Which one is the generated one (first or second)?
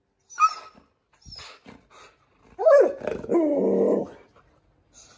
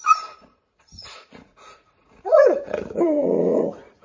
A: second